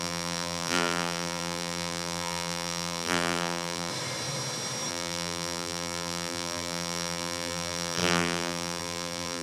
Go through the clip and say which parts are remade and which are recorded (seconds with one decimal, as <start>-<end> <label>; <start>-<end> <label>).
0.0-3.9 remade; 3.9-4.9 recorded; 4.9-9.4 remade